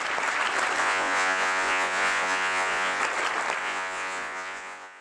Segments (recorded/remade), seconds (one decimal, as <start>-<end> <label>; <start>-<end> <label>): 0.0-0.8 recorded; 0.8-3.0 remade; 3.0-3.6 recorded; 3.6-5.0 remade